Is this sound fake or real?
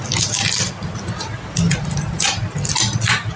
real